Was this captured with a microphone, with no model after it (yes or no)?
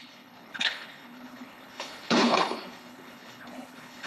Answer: no